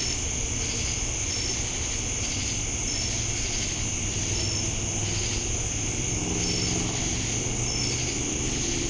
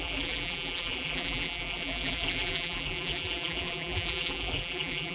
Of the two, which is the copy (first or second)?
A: second